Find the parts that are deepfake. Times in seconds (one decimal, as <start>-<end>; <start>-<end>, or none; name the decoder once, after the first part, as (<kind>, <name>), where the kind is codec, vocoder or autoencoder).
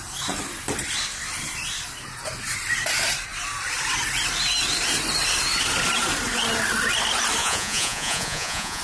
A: 7.4-8.8 (vocoder, Vocos)